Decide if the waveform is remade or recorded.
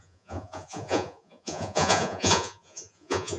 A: remade